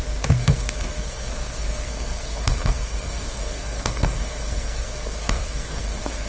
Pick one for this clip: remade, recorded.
remade